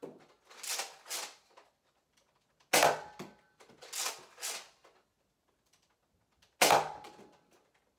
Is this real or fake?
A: real